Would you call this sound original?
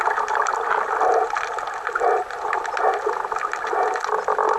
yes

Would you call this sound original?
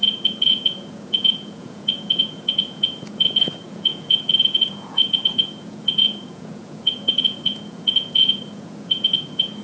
no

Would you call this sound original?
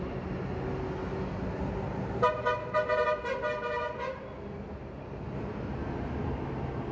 yes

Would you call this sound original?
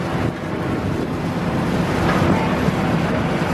yes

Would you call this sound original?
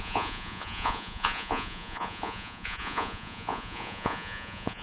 no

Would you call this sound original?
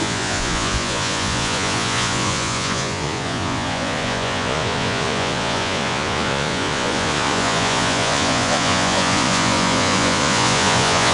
no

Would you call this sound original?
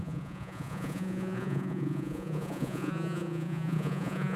no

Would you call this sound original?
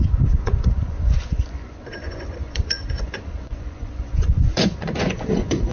no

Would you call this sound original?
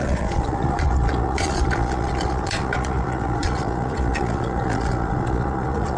no